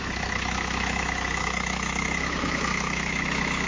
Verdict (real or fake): fake